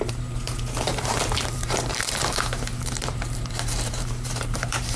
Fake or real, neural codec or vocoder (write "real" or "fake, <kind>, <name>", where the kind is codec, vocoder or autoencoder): fake, vocoder, BigVGAN v2